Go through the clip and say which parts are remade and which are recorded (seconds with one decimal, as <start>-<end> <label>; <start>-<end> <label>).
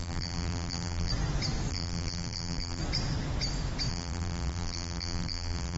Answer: 0.0-1.1 remade; 1.1-1.7 recorded; 1.7-2.8 remade; 2.8-3.9 recorded; 3.9-5.8 remade